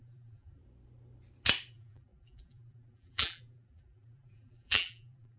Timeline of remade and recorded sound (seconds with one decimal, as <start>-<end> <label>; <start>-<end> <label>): 0.0-0.6 remade; 0.6-1.7 recorded; 1.7-5.4 remade